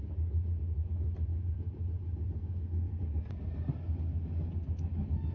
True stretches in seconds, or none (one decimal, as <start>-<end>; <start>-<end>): 0.0-5.3